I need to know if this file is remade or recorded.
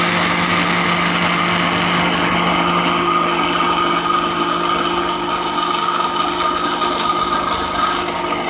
recorded